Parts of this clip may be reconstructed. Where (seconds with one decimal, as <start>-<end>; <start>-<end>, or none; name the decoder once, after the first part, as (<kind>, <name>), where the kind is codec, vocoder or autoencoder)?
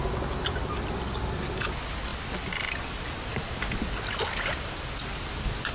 none